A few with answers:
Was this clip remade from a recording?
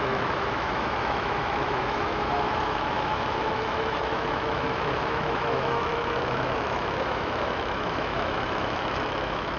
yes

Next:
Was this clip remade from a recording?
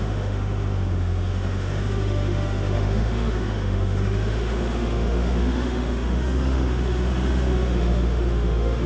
yes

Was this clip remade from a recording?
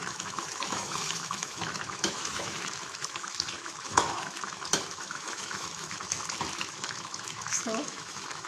yes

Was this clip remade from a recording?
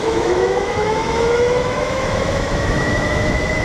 yes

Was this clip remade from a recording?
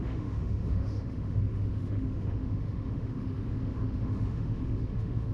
yes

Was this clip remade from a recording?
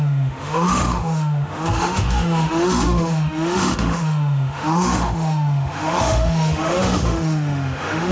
yes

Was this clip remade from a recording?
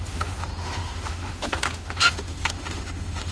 yes